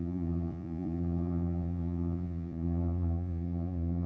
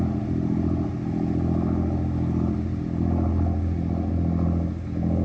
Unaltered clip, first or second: second